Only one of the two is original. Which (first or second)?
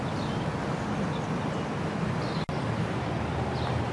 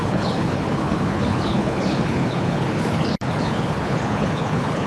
first